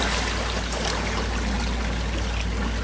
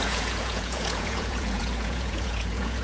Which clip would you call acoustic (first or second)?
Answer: first